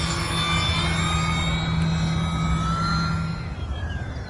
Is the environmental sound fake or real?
real